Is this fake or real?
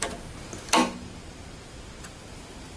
real